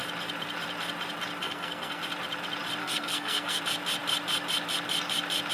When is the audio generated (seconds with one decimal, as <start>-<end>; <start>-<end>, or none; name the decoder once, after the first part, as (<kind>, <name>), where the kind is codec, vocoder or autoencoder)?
1.4-2.0 (codec, SNAC); 2.8-3.6